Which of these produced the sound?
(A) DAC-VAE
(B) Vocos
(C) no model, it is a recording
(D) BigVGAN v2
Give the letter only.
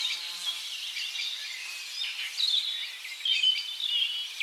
C